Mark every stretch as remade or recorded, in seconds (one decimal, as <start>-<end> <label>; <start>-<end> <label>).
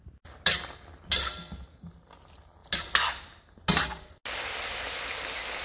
0.0-5.6 recorded